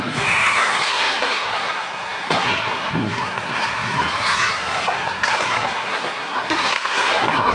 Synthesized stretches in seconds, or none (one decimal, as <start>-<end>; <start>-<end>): 0.0-7.5